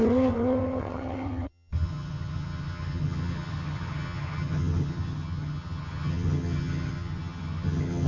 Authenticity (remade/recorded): remade